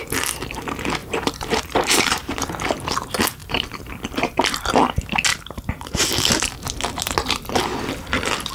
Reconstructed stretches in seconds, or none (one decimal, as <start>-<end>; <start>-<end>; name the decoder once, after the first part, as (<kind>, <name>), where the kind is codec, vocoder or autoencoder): 1.0-2.3 (vocoder, BigVGAN v2); 3.4-4.6; 5.3-6.0